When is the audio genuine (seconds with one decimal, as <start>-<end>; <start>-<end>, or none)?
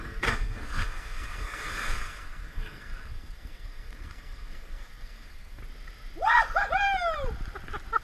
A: 5.6-8.0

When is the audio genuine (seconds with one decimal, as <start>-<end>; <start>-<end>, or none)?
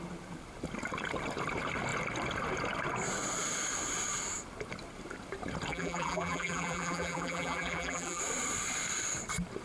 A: 0.0-5.7; 8.2-9.6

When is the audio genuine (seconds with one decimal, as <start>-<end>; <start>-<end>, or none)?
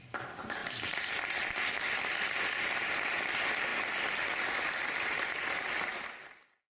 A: 0.0-0.6; 2.5-3.7; 6.0-6.7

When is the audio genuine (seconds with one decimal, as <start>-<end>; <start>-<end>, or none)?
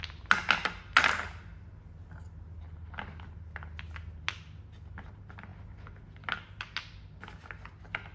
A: 0.0-8.1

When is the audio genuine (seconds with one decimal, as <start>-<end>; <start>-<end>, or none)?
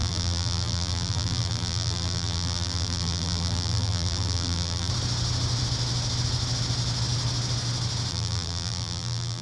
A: 4.9-8.1